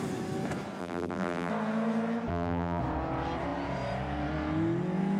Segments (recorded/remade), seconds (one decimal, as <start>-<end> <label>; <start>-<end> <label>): 0.0-0.8 recorded; 0.8-1.5 remade; 1.5-2.3 recorded; 2.3-2.8 remade; 2.8-5.2 recorded